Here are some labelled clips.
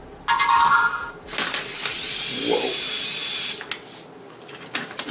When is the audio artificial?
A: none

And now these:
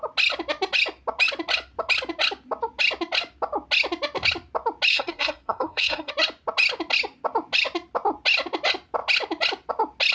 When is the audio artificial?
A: 4.9-6.1

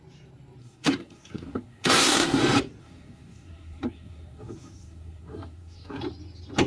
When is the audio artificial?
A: 0.6-2.4; 2.8-6.0

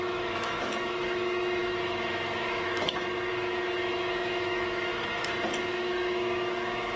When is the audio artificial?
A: 0.0-4.9; 5.6-7.0